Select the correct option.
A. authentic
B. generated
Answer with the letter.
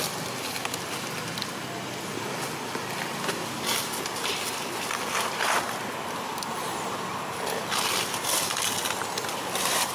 A